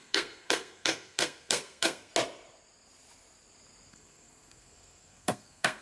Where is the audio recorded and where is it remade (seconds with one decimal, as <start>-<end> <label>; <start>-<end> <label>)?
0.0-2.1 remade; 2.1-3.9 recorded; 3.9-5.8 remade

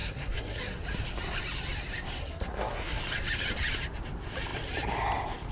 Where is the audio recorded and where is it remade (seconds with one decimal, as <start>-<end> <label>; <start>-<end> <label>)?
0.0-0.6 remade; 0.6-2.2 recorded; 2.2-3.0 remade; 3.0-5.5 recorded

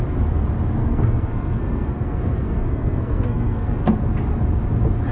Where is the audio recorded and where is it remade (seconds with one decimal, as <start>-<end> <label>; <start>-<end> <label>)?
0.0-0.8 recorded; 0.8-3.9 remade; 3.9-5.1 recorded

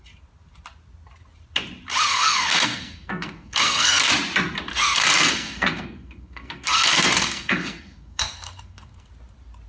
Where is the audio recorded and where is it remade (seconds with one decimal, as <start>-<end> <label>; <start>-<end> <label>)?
0.0-2.1 recorded; 2.1-4.1 remade; 4.1-4.7 recorded; 4.7-9.1 remade; 9.1-9.7 recorded

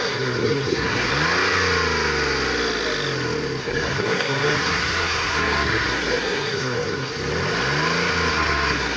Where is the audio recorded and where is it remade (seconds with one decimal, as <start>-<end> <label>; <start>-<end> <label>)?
0.0-1.1 remade; 1.1-3.6 recorded; 3.6-7.1 remade; 7.1-8.3 recorded; 8.3-9.0 remade

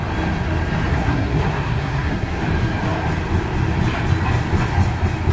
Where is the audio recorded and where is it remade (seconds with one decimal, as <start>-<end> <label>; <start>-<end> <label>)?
0.0-0.9 recorded; 0.9-2.4 remade; 2.4-5.3 recorded

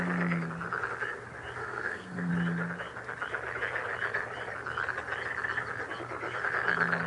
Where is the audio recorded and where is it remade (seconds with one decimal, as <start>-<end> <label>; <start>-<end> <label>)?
0.0-1.6 recorded; 1.6-2.3 remade; 2.3-7.1 recorded